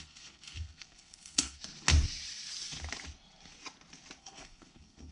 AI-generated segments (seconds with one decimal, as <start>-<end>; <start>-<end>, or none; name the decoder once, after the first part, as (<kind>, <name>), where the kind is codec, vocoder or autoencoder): 0.0-1.6 (codec, SNAC); 4.2-5.1